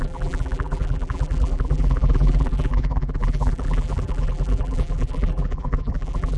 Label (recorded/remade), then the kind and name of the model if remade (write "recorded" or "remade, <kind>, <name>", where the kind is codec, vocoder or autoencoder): remade, vocoder, BigVGAN v2